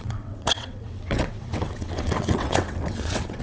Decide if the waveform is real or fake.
fake